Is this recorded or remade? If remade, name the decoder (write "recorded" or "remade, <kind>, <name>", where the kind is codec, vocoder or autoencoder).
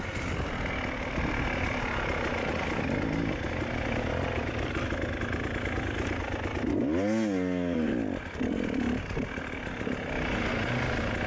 recorded